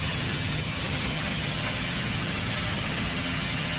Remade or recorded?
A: remade